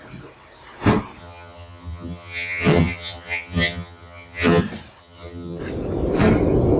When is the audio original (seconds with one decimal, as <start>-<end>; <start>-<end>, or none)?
0.0-1.2; 4.6-5.0; 5.6-6.8